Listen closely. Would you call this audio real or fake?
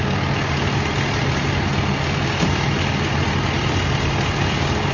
real